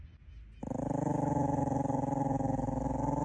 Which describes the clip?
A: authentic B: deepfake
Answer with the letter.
A